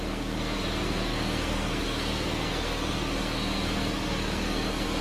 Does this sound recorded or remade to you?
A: remade